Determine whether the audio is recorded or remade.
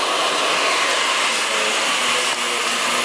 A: recorded